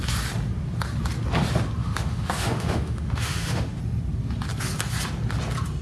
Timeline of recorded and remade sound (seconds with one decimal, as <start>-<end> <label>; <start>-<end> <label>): 0.0-1.8 recorded; 1.8-3.8 remade; 3.8-5.8 recorded